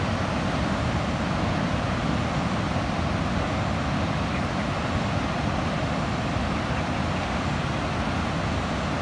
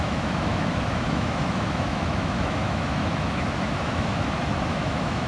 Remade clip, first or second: second